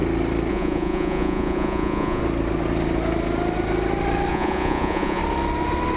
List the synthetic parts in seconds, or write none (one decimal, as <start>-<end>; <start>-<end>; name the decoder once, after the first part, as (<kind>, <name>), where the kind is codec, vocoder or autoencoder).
0.5-2.2 (vocoder, Vocos); 4.3-5.2